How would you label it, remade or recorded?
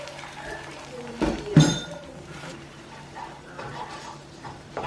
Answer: remade